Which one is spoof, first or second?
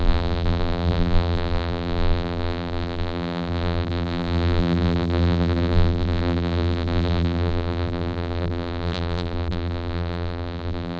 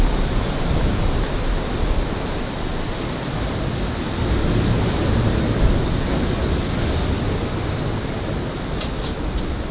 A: first